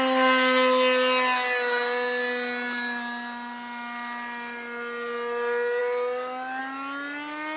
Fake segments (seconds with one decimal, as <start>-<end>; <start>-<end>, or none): none